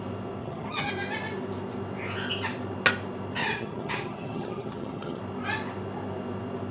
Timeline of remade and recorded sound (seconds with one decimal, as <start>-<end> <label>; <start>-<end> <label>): 0.0-0.4 recorded; 0.4-0.9 remade; 0.9-3.4 recorded; 3.4-5.2 remade; 5.2-6.7 recorded